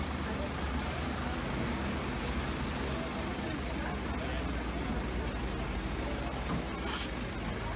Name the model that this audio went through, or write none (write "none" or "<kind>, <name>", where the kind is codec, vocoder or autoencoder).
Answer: none